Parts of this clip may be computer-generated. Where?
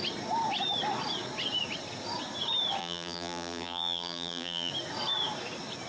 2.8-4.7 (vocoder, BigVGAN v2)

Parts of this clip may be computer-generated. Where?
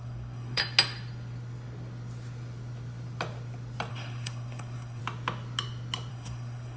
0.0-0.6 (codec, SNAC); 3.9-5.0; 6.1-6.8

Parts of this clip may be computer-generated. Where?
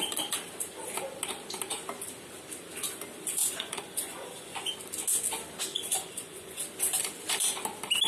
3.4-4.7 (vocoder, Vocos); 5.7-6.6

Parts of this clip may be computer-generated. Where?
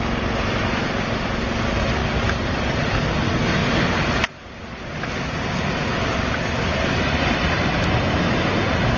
none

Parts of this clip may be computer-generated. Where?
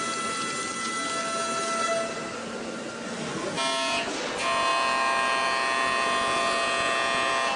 none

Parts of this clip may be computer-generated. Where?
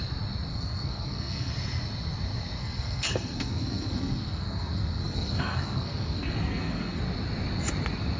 0.5-1.5 (codec, SNAC); 2.6-7.0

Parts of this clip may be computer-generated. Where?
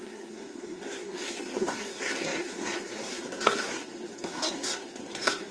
0.0-5.5 (codec, SNAC)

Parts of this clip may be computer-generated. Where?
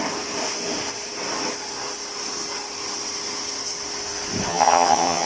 4.5-5.3 (vocoder, HiFi-GAN)